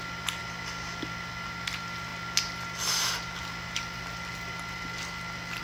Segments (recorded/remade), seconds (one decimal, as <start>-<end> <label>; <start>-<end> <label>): 0.0-5.6 recorded